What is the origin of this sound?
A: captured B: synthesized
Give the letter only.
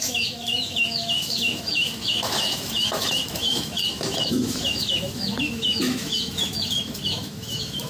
B